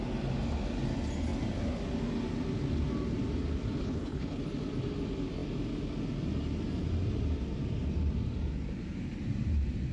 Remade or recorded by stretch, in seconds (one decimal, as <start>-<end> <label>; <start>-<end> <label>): 0.0-3.8 recorded; 3.8-4.4 remade; 4.4-9.9 recorded

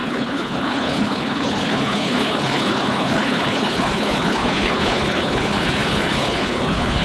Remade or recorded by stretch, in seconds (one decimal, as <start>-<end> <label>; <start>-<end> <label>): 0.0-7.0 remade